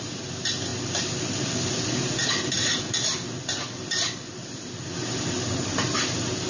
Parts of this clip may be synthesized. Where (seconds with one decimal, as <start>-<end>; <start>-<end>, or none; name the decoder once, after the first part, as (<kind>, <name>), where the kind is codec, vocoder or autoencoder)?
none

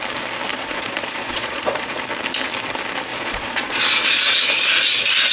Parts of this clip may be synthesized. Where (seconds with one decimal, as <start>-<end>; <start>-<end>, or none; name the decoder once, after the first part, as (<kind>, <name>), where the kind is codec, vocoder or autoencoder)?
0.5-2.0 (vocoder, Vocos); 3.1-3.8

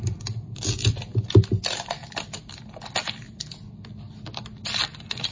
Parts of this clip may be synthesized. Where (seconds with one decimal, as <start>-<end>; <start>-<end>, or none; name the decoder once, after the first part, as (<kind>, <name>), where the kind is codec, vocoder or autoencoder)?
none

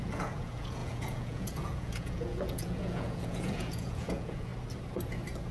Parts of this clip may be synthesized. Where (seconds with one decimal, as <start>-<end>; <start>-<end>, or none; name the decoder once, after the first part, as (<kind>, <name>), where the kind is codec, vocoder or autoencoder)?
0.0-4.5 (vocoder, Vocos)

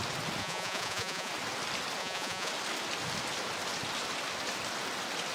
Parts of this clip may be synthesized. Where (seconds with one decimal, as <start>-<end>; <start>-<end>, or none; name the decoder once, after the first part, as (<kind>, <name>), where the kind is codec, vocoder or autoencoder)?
0.4-1.3 (vocoder, Vocos); 2.0-2.5

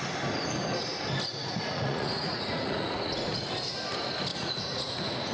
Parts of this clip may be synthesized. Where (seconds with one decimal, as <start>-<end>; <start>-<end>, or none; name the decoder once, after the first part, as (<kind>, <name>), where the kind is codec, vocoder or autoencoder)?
1.4-3.5 (vocoder, Vocos); 4.3-5.3

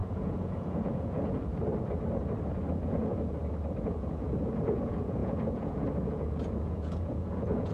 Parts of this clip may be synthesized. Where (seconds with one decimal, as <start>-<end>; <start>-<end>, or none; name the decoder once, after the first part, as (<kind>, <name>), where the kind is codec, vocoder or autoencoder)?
0.0-1.5 (vocoder, Vocos); 2.7-3.1; 3.8-7.7

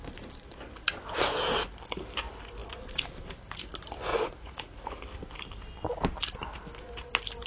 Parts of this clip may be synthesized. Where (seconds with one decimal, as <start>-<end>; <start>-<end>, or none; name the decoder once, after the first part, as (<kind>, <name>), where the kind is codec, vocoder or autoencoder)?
4.1-5.0 (vocoder, Vocos)